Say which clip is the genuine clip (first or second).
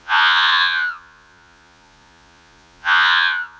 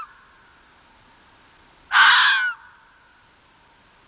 second